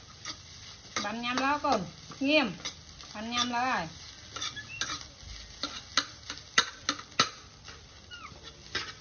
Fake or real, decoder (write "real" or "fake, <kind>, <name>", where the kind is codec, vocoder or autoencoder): real